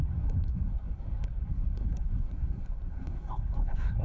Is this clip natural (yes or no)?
no